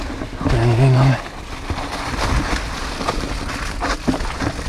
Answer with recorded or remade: recorded